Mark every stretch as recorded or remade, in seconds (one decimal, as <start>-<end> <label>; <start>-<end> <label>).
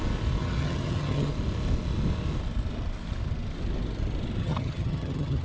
0.0-0.4 recorded; 0.4-1.3 remade; 1.3-4.4 recorded; 4.4-5.4 remade